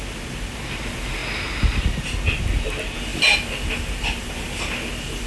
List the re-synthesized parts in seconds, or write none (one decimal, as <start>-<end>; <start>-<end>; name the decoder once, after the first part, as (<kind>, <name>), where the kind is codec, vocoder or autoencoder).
none